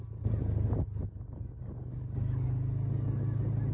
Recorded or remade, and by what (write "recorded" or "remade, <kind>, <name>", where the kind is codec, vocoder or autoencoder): recorded